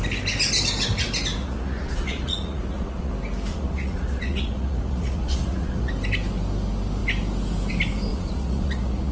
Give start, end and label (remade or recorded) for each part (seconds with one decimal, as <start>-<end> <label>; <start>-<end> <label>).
0.0-1.4 recorded; 1.4-3.1 remade; 3.1-3.5 recorded; 3.5-5.9 remade; 5.9-8.1 recorded; 8.1-9.1 remade